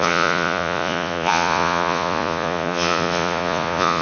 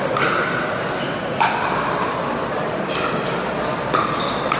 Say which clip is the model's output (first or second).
first